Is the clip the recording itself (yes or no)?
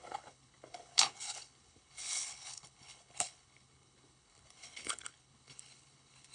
no